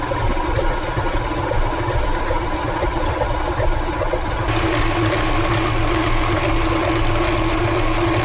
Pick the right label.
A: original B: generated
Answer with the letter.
A